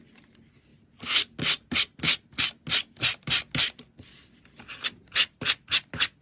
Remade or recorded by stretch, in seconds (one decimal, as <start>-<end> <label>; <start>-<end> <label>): 0.0-6.2 recorded